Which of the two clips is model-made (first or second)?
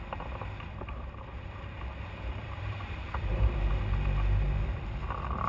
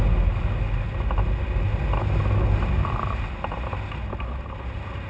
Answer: first